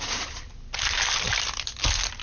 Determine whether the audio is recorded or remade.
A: recorded